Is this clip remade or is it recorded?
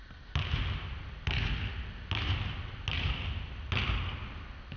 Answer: recorded